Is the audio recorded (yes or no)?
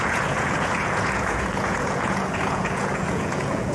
no